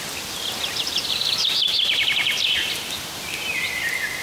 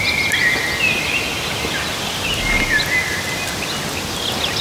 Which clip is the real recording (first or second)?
second